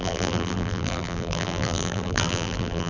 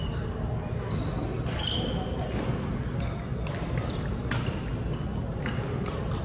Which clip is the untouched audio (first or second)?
second